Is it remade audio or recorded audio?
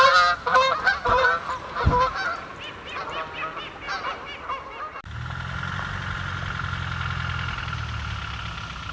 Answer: recorded